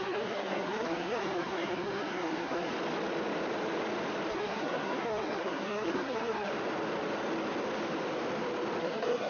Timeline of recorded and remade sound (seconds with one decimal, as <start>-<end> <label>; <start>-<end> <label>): 0.0-2.7 remade; 2.7-4.3 recorded; 4.3-6.5 remade; 6.5-8.8 recorded; 8.8-9.3 remade